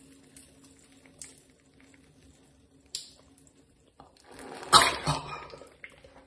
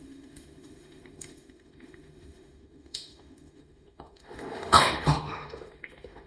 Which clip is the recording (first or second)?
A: first